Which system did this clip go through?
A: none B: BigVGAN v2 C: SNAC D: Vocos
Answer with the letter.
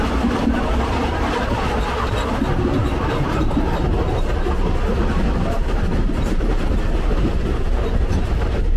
A